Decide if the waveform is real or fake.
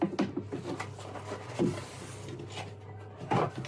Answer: real